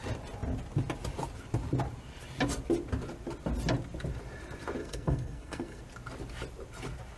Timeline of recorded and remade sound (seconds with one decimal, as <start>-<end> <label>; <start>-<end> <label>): 0.0-4.8 recorded; 4.8-5.8 remade; 5.8-7.2 recorded